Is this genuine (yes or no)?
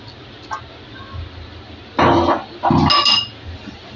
yes